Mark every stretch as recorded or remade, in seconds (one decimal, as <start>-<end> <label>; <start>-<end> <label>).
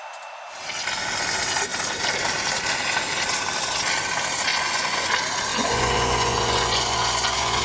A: 0.0-4.5 recorded; 4.5-5.1 remade; 5.1-5.5 recorded; 5.5-7.6 remade